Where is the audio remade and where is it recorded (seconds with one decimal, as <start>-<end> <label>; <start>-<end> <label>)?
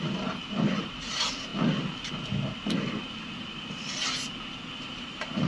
0.0-1.5 remade; 1.5-4.8 recorded; 4.8-5.5 remade